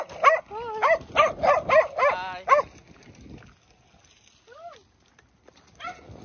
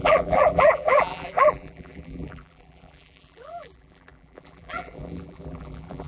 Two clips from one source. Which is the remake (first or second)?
second